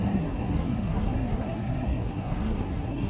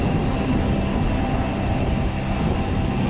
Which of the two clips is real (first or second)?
second